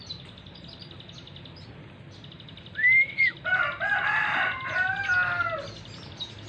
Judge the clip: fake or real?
real